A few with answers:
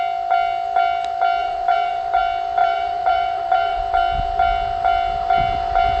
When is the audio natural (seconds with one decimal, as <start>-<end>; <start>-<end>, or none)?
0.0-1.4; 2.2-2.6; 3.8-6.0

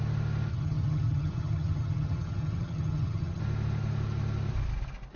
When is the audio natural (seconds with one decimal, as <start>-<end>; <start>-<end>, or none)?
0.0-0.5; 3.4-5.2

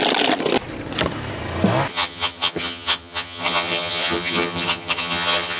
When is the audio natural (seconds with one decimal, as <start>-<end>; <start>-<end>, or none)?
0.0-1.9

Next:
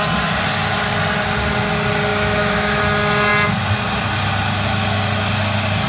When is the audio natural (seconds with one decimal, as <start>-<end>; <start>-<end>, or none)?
0.0-2.1; 2.8-5.9

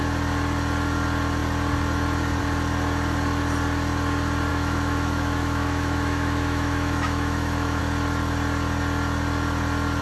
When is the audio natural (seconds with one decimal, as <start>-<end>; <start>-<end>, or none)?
0.0-4.5; 7.8-10.0